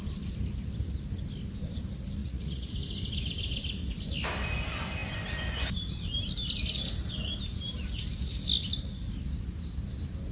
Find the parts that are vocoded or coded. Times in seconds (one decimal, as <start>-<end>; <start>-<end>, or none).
2.2-2.7